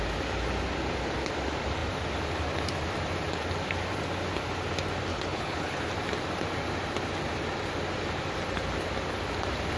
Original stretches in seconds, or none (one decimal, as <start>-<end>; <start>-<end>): 0.0-5.1; 5.9-9.8